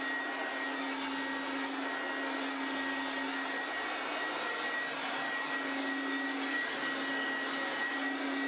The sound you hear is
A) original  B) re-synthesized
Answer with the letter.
A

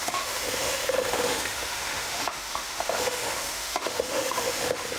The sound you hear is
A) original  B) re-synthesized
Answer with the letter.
B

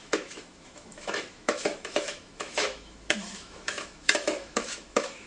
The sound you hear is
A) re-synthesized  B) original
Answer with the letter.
A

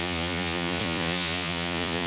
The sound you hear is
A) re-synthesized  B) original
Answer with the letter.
A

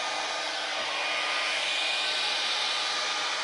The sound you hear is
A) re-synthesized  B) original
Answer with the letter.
B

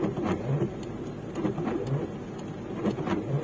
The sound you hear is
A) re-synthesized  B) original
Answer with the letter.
B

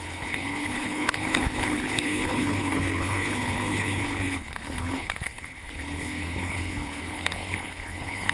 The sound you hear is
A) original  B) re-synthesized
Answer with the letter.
B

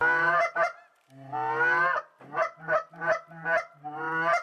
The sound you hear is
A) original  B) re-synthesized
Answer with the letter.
A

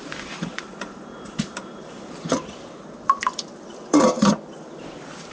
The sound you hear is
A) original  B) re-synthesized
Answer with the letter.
B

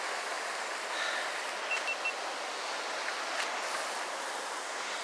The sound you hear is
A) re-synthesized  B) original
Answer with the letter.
B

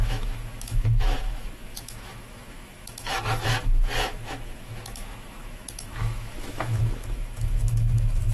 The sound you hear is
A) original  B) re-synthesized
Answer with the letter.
B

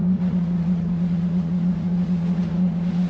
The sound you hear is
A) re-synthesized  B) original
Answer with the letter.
A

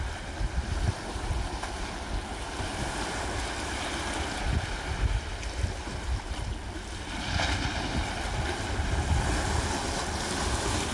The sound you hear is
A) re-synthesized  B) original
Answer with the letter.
B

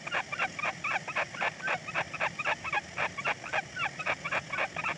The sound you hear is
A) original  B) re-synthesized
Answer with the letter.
A